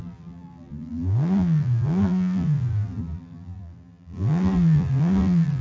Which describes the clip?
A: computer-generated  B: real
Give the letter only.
A